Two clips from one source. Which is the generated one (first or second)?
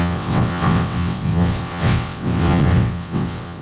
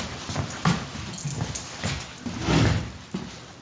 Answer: first